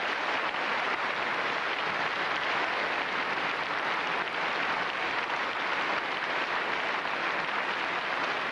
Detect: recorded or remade recorded